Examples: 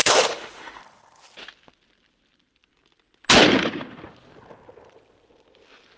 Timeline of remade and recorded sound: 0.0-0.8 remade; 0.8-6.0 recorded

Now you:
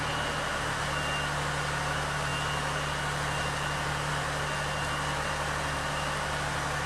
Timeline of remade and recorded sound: 0.0-6.9 recorded

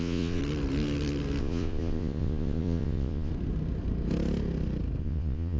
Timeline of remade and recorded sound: 0.0-0.4 remade; 0.4-1.4 recorded; 1.4-3.3 remade; 3.3-5.0 recorded; 5.0-5.6 remade

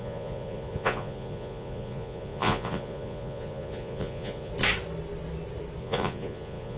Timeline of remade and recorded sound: 0.0-4.5 remade; 4.5-5.8 recorded; 5.8-6.8 remade

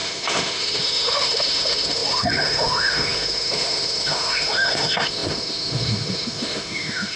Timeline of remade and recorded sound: 0.0-7.2 remade

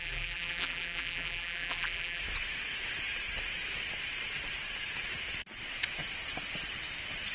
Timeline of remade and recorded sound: 0.0-2.2 remade; 2.2-7.3 recorded

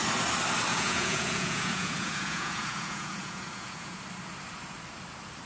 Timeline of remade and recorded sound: 0.0-0.7 recorded; 0.7-4.0 remade; 4.0-5.5 recorded